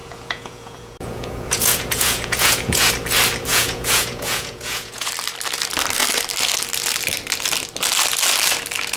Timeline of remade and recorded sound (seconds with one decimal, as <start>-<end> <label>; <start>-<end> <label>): 0.0-2.9 remade; 2.9-3.5 recorded; 3.5-5.1 remade; 5.1-9.0 recorded